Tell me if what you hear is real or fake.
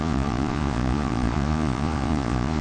fake